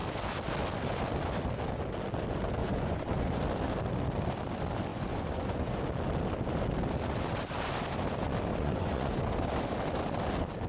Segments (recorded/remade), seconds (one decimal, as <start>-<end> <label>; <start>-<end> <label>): 0.0-2.6 recorded; 2.6-3.4 remade; 3.4-4.9 recorded; 4.9-5.8 remade; 5.8-8.5 recorded; 8.5-9.2 remade; 9.2-10.7 recorded